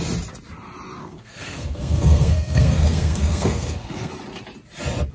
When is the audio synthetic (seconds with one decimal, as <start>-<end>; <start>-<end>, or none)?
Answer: 1.0-4.1